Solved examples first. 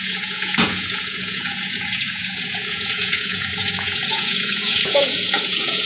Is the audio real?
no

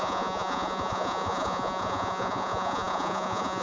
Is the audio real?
no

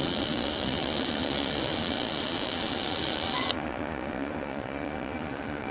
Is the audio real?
no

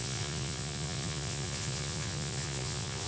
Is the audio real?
no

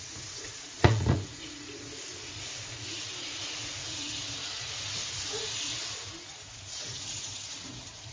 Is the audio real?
no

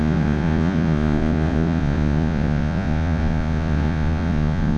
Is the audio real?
no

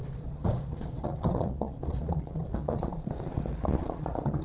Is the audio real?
no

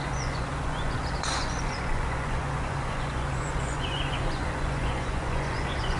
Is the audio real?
no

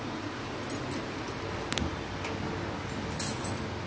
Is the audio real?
yes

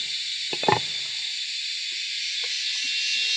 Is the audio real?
yes